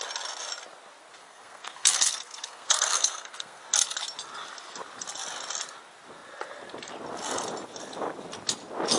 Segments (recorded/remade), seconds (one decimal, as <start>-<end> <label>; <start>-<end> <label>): 0.0-1.2 recorded; 1.2-3.6 remade; 3.6-9.0 recorded